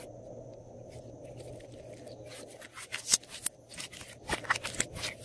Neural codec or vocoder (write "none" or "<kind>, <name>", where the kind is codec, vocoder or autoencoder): none